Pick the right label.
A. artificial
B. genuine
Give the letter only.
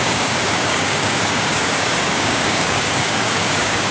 A